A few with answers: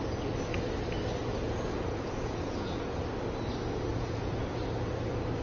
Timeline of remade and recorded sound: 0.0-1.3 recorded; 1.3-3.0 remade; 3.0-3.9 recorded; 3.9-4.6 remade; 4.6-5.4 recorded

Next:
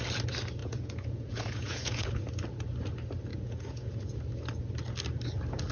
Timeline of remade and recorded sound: 0.0-0.6 recorded; 0.6-2.2 remade; 2.2-3.3 recorded; 3.3-4.2 remade; 4.2-5.7 recorded

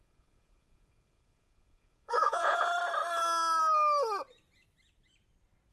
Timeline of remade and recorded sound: 0.0-2.7 remade; 2.7-5.7 recorded

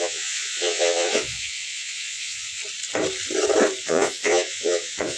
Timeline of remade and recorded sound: 0.0-2.6 remade; 2.6-3.8 recorded; 3.8-5.2 remade